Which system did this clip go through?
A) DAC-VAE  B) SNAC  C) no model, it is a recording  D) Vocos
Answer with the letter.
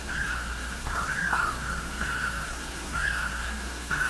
B